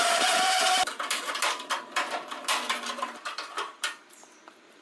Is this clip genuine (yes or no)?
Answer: no